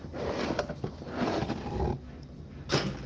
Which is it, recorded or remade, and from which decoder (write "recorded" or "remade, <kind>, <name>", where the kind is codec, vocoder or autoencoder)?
recorded